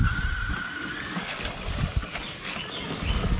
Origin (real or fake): real